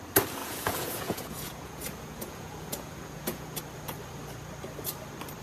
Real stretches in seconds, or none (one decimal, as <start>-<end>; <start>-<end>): 0.0-0.4; 3.6-5.4